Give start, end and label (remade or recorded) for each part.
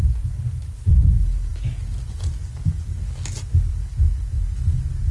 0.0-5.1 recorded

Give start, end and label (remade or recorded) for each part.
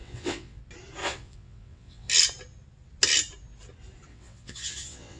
0.0-0.6 remade; 0.6-1.0 recorded; 1.0-2.1 remade; 2.1-4.1 recorded; 4.1-5.2 remade